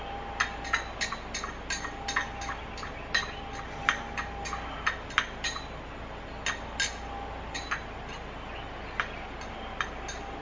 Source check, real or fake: real